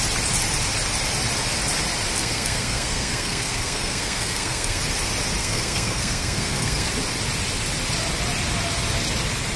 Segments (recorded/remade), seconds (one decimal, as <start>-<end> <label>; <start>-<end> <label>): 0.0-2.2 recorded; 2.2-4.8 remade; 4.8-5.4 recorded; 5.4-6.9 remade; 6.9-9.6 recorded